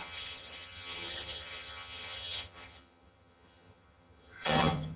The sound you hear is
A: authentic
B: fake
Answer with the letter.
B